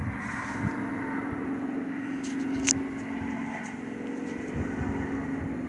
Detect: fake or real real